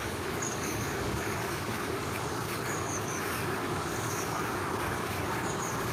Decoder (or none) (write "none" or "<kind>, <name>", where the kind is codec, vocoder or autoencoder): codec, DAC